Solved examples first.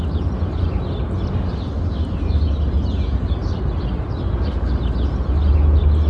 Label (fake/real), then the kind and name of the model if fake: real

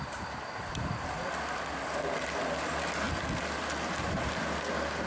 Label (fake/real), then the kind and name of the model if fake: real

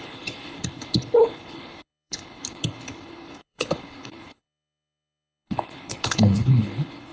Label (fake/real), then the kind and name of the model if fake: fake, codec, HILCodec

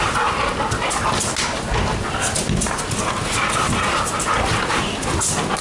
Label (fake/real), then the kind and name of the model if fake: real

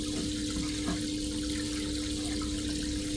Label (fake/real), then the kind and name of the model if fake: real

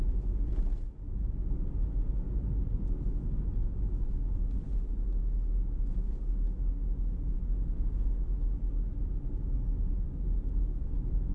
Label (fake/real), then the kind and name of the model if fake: real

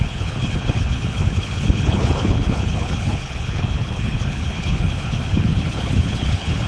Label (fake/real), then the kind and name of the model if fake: fake, codec, HILCodec